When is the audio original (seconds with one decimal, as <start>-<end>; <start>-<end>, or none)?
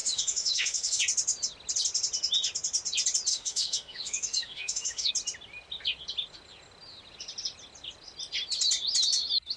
1.0-3.3; 5.1-9.6